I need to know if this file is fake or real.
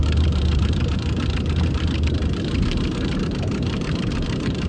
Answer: fake